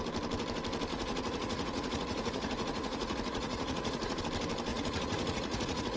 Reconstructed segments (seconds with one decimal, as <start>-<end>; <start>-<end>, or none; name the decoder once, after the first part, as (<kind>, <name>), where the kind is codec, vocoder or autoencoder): 0.9-4.2 (vocoder, Vocos); 4.7-6.0